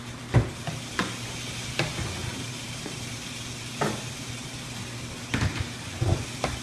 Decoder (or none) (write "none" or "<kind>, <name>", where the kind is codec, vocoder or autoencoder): none